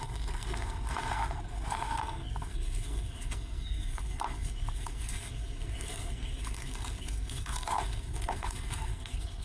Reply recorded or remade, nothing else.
remade